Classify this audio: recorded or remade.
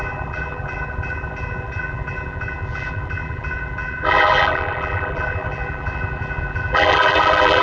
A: remade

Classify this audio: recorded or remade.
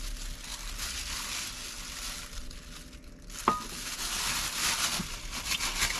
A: recorded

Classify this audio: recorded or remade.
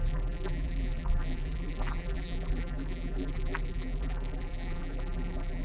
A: remade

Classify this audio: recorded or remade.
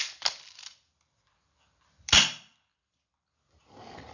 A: remade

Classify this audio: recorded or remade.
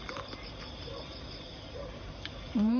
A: remade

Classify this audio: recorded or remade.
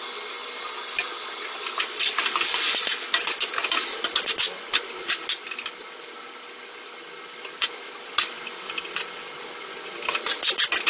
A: recorded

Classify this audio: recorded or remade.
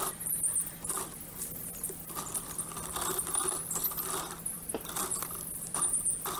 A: recorded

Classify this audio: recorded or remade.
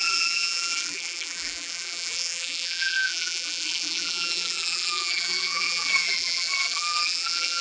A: remade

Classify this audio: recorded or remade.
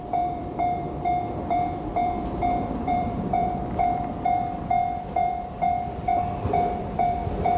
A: remade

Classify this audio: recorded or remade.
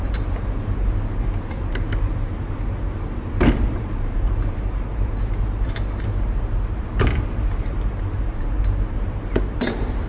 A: remade